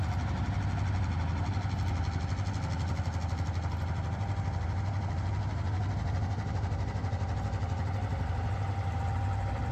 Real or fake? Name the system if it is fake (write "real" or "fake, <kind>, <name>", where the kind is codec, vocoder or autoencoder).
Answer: real